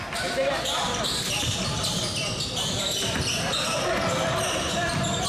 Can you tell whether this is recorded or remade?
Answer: recorded